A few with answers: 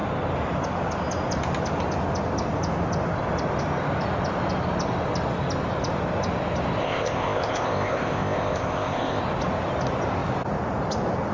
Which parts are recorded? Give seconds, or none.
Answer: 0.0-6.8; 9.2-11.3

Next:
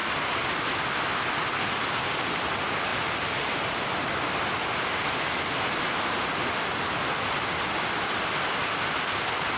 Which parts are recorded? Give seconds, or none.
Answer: 0.0-1.8

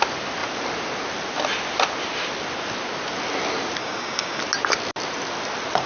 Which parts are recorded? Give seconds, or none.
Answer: 0.0-3.8; 4.4-5.9